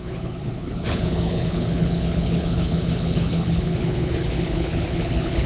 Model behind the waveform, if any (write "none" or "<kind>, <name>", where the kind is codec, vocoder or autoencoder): codec, HILCodec